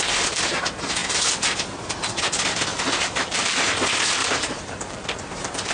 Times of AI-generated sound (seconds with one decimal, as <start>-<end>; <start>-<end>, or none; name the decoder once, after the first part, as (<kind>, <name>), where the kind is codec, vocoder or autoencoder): 2.7-3.8 (vocoder, BigVGAN v2); 4.2-5.2